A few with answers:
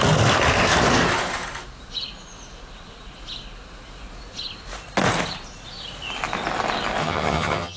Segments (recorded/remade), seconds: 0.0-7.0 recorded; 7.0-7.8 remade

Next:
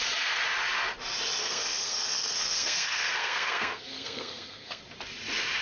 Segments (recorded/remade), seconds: 0.0-1.4 recorded; 1.4-4.8 remade; 4.8-5.6 recorded

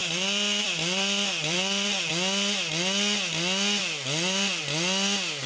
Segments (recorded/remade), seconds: 0.0-2.1 remade; 2.1-3.8 recorded; 3.8-4.6 remade; 4.6-5.5 recorded

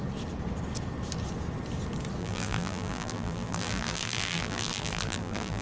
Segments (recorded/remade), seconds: 0.0-2.2 recorded; 2.2-5.6 remade

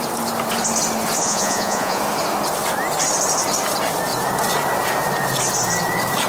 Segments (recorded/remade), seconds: 0.0-1.2 recorded; 1.2-2.0 remade; 2.0-6.3 recorded

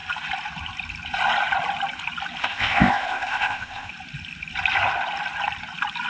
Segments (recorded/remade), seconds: 0.0-2.4 recorded; 2.4-3.9 remade; 3.9-6.1 recorded

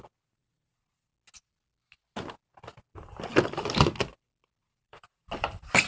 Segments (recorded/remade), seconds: 0.0-1.1 remade; 1.1-4.6 recorded; 4.6-5.9 remade

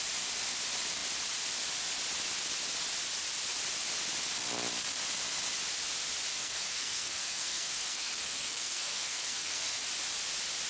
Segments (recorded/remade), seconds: 0.0-6.3 recorded; 6.3-9.8 remade; 9.8-10.7 recorded